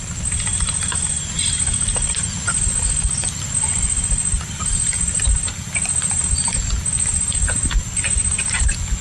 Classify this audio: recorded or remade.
recorded